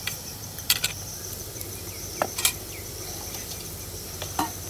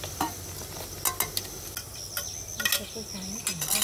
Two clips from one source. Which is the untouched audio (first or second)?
second